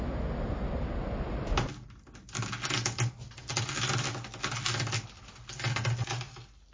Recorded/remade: recorded